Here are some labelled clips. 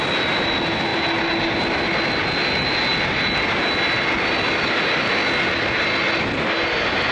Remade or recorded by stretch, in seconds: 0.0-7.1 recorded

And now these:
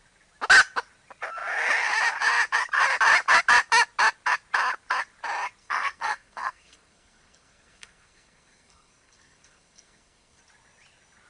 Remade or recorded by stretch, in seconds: 0.0-5.6 recorded; 5.6-10.4 remade; 10.4-11.3 recorded

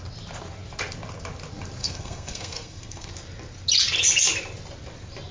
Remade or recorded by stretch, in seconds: 0.0-1.8 recorded; 1.8-3.1 remade; 3.1-5.3 recorded

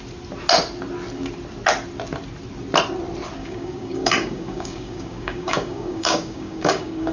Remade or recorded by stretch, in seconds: 0.0-3.4 recorded; 3.4-7.1 remade

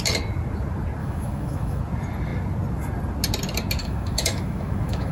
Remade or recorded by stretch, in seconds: 0.0-1.0 recorded; 1.0-1.8 remade; 1.8-3.8 recorded; 3.8-5.1 remade